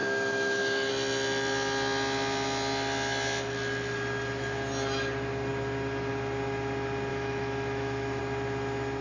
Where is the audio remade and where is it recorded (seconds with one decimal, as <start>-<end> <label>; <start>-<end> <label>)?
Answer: 0.0-0.9 remade; 0.9-7.1 recorded; 7.1-8.2 remade; 8.2-9.0 recorded